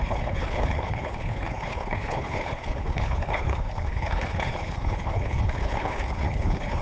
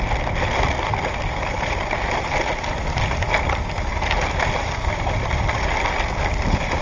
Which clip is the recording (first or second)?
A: second